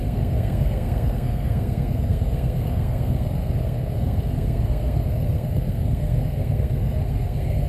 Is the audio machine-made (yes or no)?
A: yes